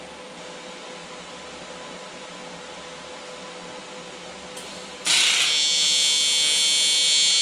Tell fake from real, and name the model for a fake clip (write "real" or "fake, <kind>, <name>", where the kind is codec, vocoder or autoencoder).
real